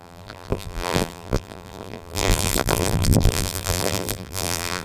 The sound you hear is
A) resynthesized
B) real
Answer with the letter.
A